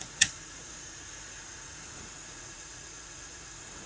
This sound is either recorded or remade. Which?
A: remade